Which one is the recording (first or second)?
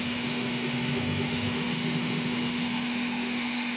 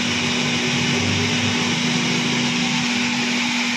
second